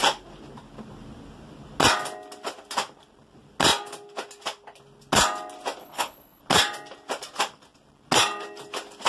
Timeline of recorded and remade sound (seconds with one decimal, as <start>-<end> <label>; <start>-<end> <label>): 0.0-5.8 recorded; 5.8-6.4 remade; 6.4-9.1 recorded